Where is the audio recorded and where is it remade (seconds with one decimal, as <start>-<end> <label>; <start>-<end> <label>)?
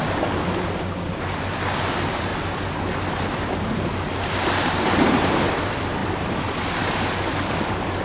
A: 0.0-2.3 remade; 2.3-5.1 recorded; 5.1-8.0 remade